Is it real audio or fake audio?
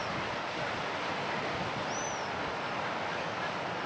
real